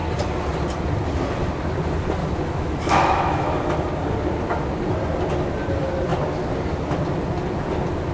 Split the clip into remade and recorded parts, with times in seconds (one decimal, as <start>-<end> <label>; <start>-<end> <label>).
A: 0.0-2.2 recorded; 2.2-3.6 remade; 3.6-8.1 recorded

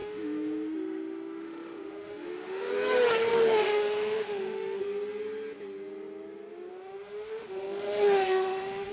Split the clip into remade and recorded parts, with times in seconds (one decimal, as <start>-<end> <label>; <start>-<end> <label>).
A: 0.0-2.7 remade; 2.7-3.3 recorded; 3.3-4.8 remade; 4.8-6.7 recorded; 6.7-8.9 remade

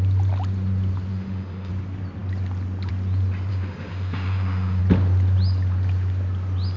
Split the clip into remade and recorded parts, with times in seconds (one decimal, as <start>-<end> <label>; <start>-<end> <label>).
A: 0.0-1.1 recorded; 1.1-1.7 remade; 1.7-3.5 recorded; 3.5-4.8 remade; 4.8-6.8 recorded

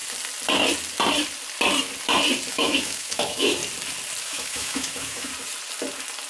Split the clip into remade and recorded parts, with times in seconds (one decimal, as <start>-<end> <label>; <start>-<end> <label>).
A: 0.0-2.5 recorded; 2.5-3.6 remade; 3.6-4.2 recorded; 4.2-5.3 remade; 5.3-6.3 recorded

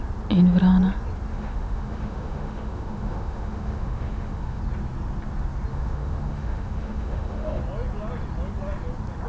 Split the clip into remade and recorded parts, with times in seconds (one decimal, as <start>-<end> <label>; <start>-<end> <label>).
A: 0.0-1.3 recorded; 1.3-4.6 remade; 4.6-5.7 recorded; 5.7-7.6 remade; 7.6-9.3 recorded